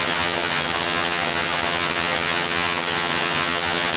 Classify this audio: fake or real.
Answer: fake